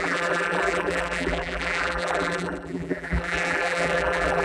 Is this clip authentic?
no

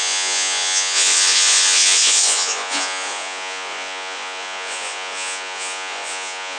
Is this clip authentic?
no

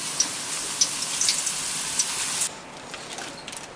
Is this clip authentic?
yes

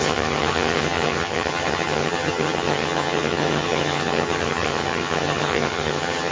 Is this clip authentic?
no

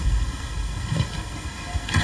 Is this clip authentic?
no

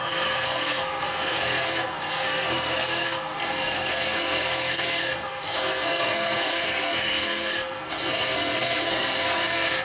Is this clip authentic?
no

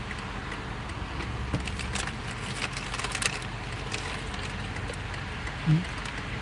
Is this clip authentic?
yes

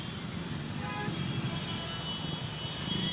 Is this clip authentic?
yes